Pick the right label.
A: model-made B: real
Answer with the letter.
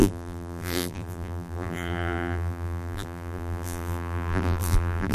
A